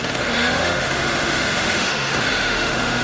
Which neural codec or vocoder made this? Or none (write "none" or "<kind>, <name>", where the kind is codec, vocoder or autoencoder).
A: autoencoder, DAC-VAE